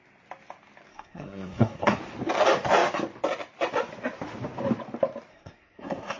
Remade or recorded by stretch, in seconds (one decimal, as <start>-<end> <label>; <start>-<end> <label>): 0.0-0.9 recorded; 0.9-2.0 remade; 2.0-5.3 recorded; 5.3-6.2 remade